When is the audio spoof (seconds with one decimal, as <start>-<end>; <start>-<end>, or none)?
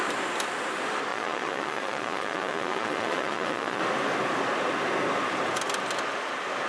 1.1-3.8